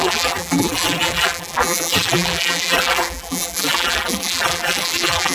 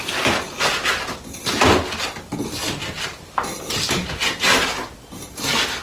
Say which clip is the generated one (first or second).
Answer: first